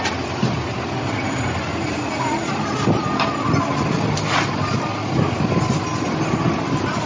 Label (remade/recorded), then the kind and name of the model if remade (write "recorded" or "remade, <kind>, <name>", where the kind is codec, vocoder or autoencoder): recorded